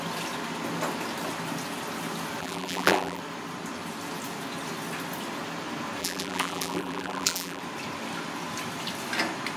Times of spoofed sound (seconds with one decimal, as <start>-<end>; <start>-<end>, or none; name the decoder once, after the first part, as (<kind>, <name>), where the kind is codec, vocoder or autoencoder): 2.4-3.2 (vocoder, BigVGAN v2); 6.0-7.6